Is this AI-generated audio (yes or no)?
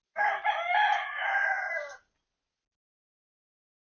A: no